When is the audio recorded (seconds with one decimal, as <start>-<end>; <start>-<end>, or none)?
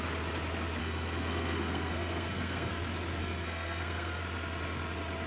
0.0-0.8; 2.7-3.2; 4.2-5.3